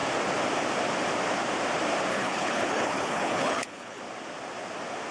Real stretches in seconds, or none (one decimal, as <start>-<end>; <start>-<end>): 0.0-2.1; 4.0-5.1